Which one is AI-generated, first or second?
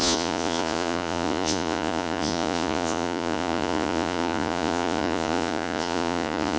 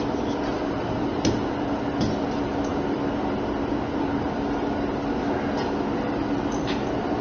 first